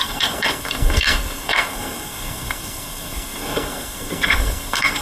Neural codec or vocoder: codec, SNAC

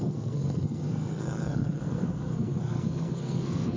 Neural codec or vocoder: codec, SNAC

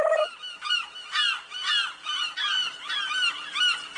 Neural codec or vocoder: none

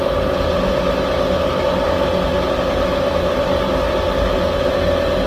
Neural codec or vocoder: none